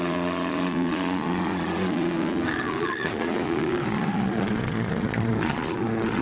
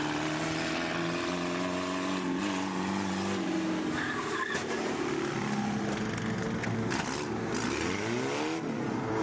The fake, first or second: first